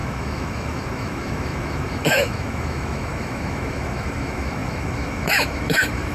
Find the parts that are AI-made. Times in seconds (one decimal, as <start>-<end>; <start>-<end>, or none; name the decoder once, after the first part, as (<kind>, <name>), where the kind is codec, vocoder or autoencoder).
0.0-6.1 (autoencoder, DAC-VAE)